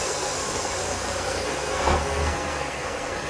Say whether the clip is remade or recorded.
remade